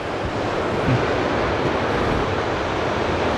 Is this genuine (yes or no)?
yes